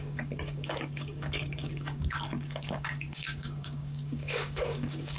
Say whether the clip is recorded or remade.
remade